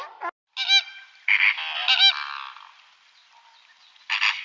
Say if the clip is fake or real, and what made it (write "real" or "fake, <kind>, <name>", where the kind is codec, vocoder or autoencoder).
real